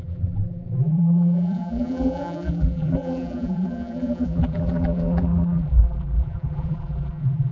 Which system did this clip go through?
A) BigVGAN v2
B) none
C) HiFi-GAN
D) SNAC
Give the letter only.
A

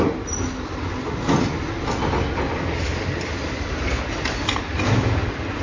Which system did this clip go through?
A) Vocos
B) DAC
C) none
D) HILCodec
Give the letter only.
C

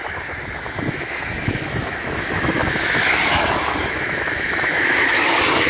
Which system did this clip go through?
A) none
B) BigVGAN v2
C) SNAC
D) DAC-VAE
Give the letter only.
D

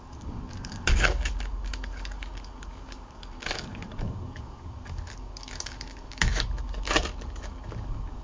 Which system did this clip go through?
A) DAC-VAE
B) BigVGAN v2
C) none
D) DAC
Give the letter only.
D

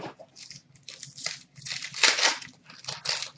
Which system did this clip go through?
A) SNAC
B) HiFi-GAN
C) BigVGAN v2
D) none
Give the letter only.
D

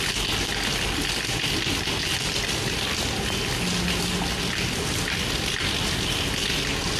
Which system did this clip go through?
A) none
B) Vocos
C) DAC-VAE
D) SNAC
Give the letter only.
A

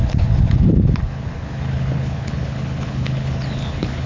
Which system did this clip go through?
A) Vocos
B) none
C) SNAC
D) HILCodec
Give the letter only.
D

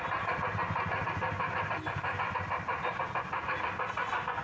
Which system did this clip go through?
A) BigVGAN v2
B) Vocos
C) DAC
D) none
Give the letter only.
D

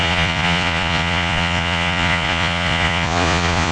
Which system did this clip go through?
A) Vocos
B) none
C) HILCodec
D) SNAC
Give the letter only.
A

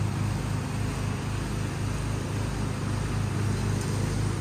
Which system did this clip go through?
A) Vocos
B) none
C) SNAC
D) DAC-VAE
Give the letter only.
B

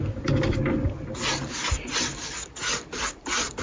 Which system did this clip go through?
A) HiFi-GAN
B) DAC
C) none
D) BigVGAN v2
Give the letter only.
C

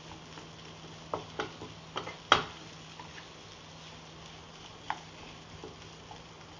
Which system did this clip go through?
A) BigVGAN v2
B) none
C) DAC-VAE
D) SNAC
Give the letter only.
B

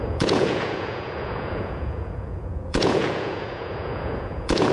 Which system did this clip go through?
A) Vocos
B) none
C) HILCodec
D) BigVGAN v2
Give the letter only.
A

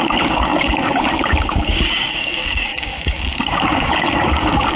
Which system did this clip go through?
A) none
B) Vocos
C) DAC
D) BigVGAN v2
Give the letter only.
C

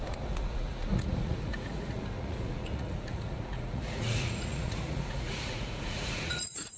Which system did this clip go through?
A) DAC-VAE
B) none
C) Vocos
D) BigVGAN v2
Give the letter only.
C